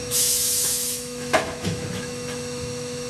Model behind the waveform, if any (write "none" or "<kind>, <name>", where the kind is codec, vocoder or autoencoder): autoencoder, DAC-VAE